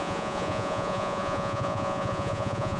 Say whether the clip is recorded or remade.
remade